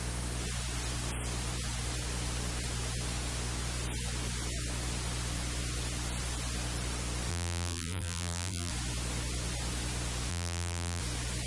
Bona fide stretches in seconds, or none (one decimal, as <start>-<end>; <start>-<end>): 0.0-7.3; 8.7-10.3; 11.0-11.5